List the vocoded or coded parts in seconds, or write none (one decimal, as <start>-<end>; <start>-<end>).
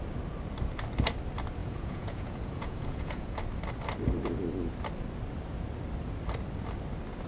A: 1.6-3.4